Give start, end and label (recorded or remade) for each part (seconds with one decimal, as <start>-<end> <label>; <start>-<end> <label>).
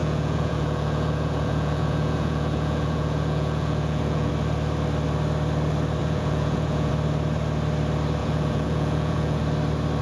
0.0-4.3 remade; 4.3-6.0 recorded; 6.0-6.9 remade; 6.9-8.2 recorded; 8.2-9.4 remade; 9.4-10.0 recorded